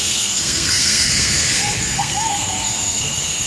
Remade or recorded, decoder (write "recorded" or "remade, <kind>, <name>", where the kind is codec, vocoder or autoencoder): remade, codec, SNAC